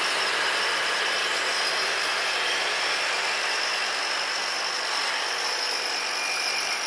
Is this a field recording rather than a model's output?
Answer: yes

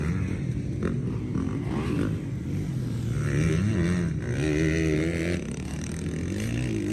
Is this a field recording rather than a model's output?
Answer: yes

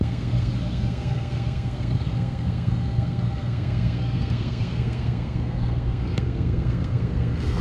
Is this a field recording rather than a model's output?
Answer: no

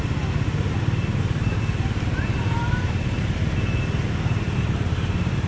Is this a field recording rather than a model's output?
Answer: yes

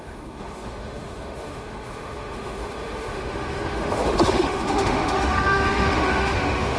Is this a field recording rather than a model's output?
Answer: no